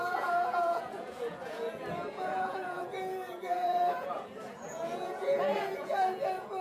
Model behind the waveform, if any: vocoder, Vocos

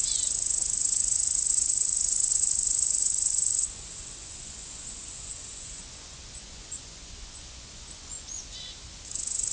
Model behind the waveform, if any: vocoder, Vocos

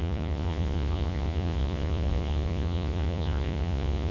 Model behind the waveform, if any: vocoder, Vocos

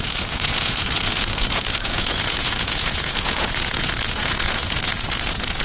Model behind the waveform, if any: vocoder, Vocos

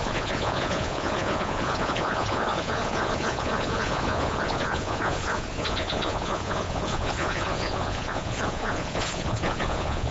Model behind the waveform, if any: vocoder, Vocos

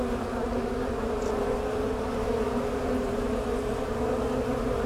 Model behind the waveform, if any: none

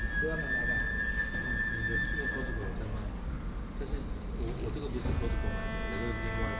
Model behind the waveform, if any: none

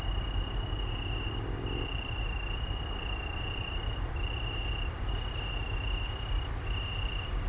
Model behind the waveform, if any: none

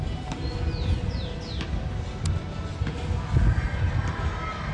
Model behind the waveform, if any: none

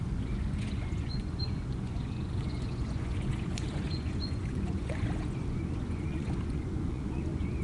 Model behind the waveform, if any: vocoder, Vocos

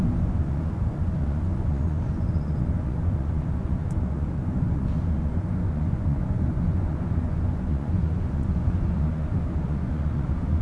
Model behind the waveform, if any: vocoder, Vocos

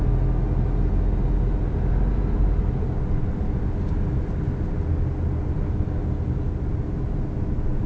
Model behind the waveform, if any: none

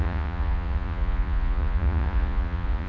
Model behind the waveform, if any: vocoder, Vocos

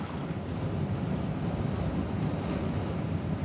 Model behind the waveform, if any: none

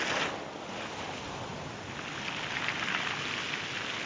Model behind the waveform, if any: none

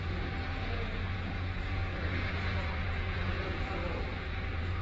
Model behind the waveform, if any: vocoder, Vocos